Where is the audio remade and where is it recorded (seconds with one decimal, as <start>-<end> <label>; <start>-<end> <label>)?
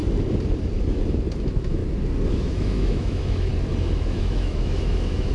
0.0-1.4 recorded; 1.4-1.8 remade; 1.8-2.3 recorded; 2.3-3.5 remade; 3.5-4.0 recorded; 4.0-5.3 remade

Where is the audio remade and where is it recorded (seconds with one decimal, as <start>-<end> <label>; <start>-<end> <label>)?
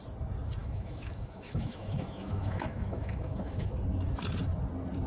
0.0-0.6 recorded; 0.6-3.7 remade; 3.7-5.1 recorded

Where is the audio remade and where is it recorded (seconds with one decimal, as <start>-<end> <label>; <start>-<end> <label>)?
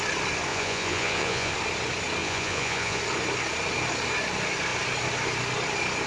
0.0-0.5 recorded; 0.5-1.5 remade; 1.5-2.2 recorded; 2.2-3.0 remade; 3.0-6.1 recorded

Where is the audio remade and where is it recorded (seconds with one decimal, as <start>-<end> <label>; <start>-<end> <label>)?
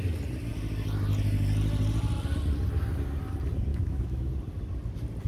0.0-3.7 recorded; 3.7-4.3 remade; 4.3-5.3 recorded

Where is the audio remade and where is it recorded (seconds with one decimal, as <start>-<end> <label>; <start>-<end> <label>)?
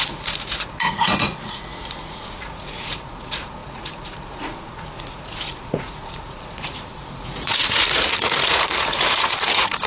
0.0-9.9 remade